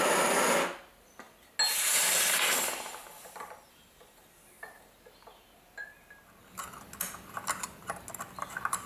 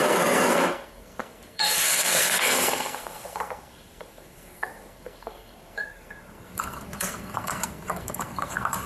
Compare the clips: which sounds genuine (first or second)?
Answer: first